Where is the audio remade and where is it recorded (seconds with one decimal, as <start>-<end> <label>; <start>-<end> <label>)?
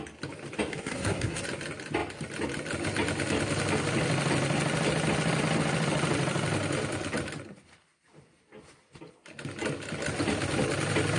0.0-0.7 recorded; 0.7-1.4 remade; 1.4-11.2 recorded